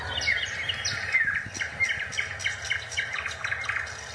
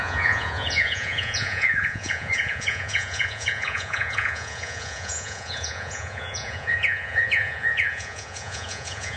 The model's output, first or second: second